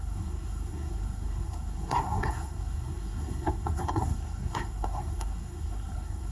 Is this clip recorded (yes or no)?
no